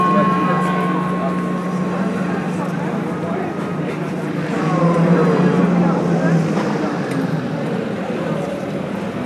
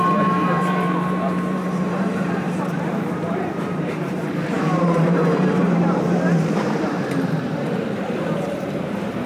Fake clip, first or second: second